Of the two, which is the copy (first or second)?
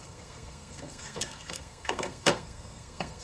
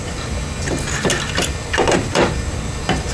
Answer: first